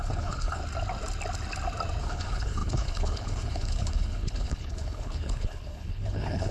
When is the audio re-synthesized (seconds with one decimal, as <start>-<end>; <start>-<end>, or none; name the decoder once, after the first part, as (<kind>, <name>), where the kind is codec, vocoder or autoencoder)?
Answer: 0.0-0.6 (codec, HILCodec); 2.0-6.5